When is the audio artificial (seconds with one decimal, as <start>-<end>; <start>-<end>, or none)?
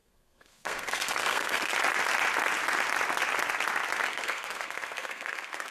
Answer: 0.0-1.7; 4.1-5.7